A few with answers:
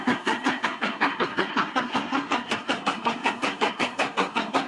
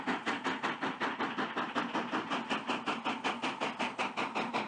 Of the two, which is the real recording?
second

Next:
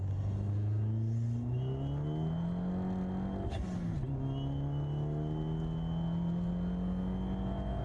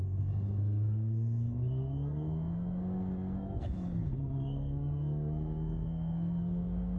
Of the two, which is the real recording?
first